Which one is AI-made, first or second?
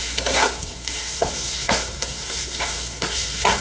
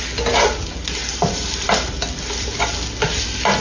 first